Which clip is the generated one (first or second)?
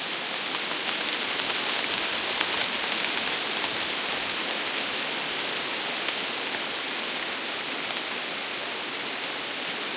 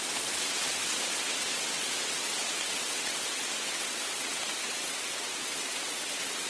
second